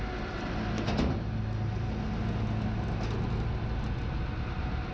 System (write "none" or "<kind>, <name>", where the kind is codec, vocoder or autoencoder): none